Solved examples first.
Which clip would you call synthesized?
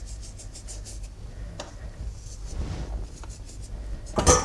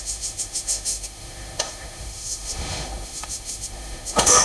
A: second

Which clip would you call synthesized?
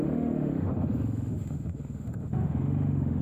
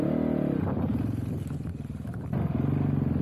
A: first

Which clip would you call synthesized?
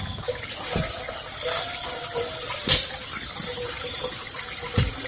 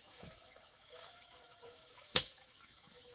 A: second